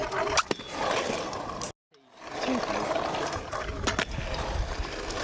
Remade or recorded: recorded